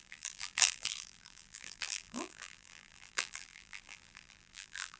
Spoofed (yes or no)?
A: yes